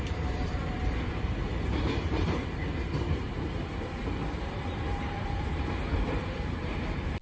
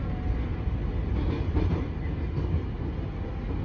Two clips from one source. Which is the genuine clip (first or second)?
second